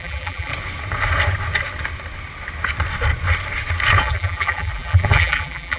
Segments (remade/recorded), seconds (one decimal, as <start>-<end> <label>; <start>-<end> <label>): 0.0-0.5 remade; 0.5-4.0 recorded; 4.0-5.8 remade